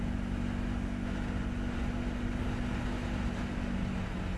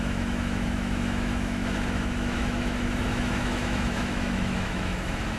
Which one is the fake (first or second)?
second